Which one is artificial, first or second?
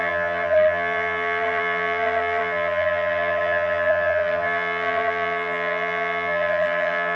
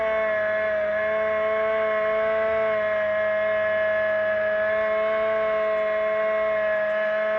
first